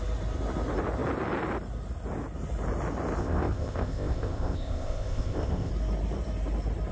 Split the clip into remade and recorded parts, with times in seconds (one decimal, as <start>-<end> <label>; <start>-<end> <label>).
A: 0.0-3.2 recorded; 3.2-5.7 remade; 5.7-6.9 recorded